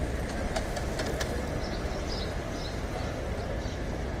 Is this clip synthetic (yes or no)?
no